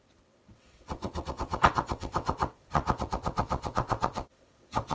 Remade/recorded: remade